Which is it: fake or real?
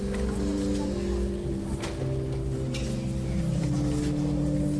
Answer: real